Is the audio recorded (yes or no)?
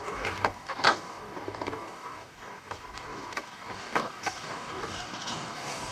no